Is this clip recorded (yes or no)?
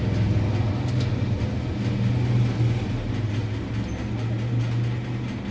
yes